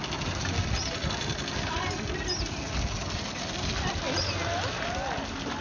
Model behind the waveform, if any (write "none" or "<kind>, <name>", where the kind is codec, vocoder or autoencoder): none